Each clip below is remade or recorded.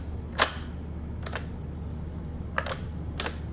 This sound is recorded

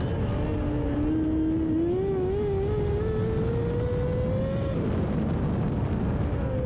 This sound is recorded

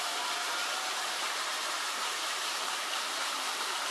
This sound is remade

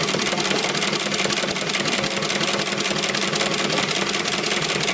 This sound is recorded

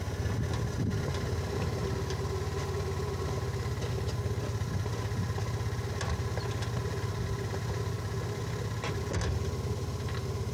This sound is recorded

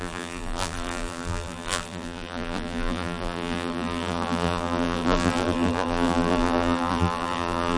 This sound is remade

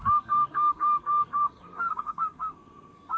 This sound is remade